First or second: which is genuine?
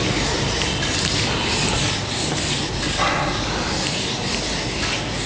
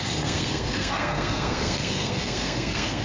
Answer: first